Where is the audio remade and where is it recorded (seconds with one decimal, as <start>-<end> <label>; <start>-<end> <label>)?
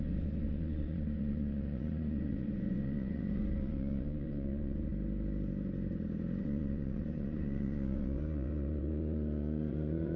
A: 0.0-4.9 remade; 4.9-6.4 recorded; 6.4-10.2 remade